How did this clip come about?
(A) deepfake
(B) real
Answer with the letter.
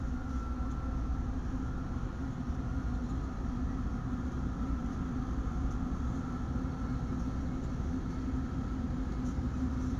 B